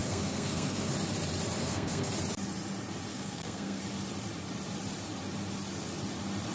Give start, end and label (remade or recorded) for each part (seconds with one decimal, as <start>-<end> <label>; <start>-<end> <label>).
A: 0.0-0.9 remade; 0.9-1.6 recorded; 1.6-2.1 remade; 2.1-3.1 recorded; 3.1-3.8 remade; 3.8-6.5 recorded